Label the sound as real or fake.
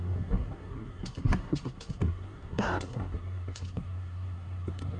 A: fake